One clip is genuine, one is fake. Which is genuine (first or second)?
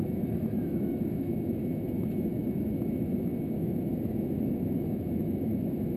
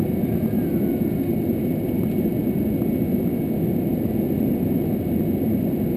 second